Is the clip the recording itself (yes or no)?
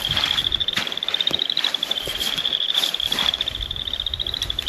no